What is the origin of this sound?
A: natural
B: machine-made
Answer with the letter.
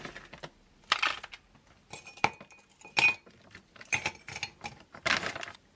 A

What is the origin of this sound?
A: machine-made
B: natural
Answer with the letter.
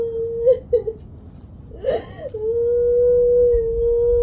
B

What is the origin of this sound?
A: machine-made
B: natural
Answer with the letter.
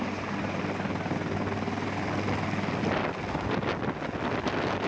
B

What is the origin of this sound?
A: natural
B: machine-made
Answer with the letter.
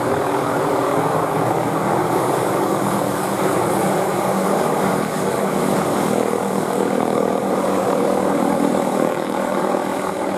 B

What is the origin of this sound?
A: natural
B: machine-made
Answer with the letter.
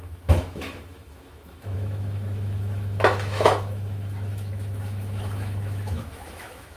B